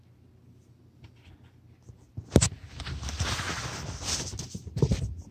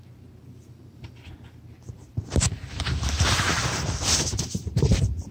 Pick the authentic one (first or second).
first